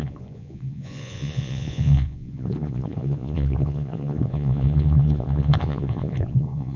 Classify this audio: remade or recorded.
remade